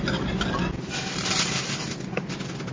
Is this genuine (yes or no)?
yes